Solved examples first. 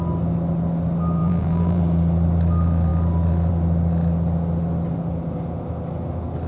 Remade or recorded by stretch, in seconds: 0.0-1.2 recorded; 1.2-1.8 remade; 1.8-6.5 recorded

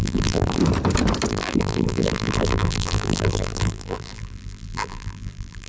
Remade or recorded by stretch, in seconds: 0.0-0.6 remade; 0.6-1.3 recorded; 1.3-5.7 remade

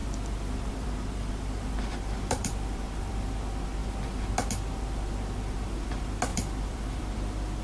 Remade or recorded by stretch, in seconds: 0.0-3.1 remade; 3.1-6.3 recorded; 6.3-7.0 remade; 7.0-7.6 recorded

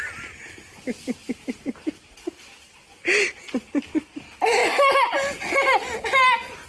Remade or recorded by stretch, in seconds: 0.0-1.2 recorded; 1.2-2.8 remade; 2.8-6.7 recorded

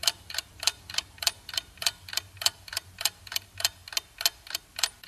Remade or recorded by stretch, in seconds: 0.0-3.8 remade; 3.8-4.5 recorded; 4.5-5.1 remade

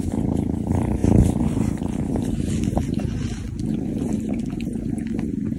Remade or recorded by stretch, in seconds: 0.0-5.6 recorded

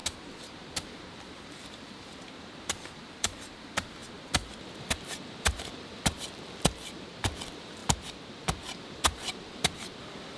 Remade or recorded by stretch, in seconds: 0.0-1.5 recorded; 1.5-4.0 remade; 4.0-4.8 recorded; 4.8-7.8 remade; 7.8-8.8 recorded; 8.8-10.4 remade

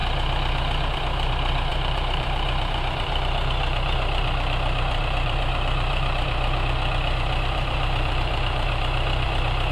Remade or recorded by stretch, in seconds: 0.0-0.9 recorded; 0.9-9.7 remade